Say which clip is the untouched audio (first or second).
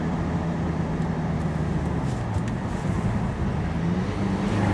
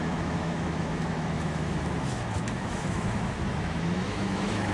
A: first